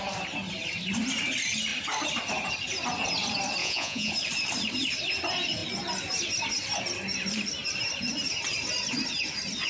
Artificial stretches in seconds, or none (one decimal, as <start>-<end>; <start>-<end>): 3.6-4.1